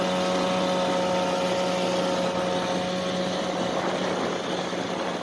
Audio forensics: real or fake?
real